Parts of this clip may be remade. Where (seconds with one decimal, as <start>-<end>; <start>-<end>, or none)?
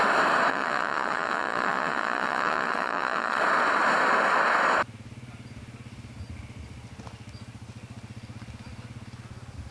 0.5-3.4